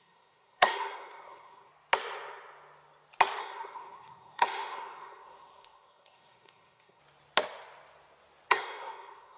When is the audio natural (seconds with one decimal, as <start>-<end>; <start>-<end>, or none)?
1.7-3.4; 7.0-8.5